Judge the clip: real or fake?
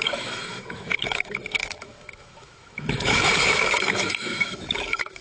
fake